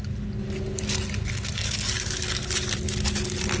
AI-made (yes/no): no